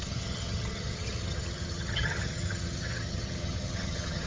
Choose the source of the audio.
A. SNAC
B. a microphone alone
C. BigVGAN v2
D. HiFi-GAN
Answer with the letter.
D